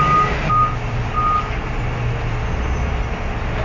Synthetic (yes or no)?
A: no